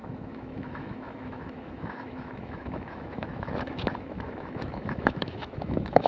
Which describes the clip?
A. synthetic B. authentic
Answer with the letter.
A